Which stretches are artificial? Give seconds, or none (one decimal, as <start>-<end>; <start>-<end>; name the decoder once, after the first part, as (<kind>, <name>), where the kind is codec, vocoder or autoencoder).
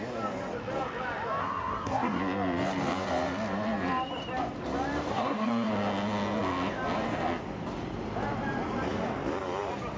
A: 1.4-2.2 (codec, SNAC); 5.1-5.7